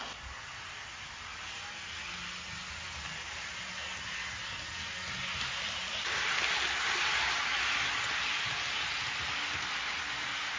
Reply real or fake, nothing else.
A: real